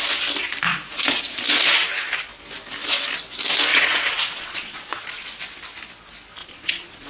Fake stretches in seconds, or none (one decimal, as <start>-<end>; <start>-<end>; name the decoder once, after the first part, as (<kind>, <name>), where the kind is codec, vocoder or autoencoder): 0.7-1.2 (vocoder, Vocos); 3.7-5.3; 6.4-7.1